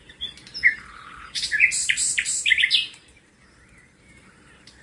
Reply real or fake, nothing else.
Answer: fake